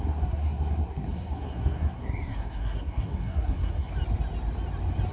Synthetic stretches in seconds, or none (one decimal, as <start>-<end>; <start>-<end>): 0.0-3.9